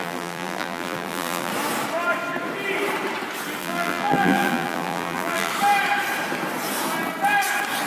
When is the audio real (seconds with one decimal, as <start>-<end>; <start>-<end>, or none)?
1.5-3.6; 5.5-7.9